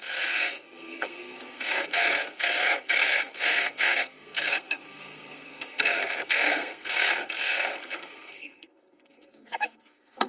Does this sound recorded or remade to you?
remade